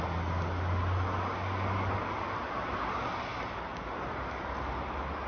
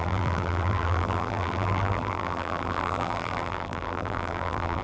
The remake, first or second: second